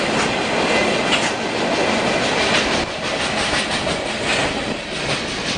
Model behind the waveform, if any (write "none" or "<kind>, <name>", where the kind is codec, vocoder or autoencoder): none